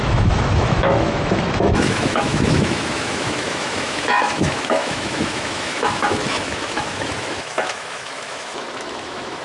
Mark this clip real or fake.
fake